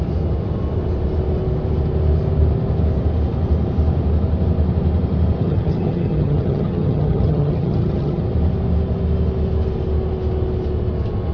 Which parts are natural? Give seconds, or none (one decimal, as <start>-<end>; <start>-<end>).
0.0-5.4; 8.2-11.3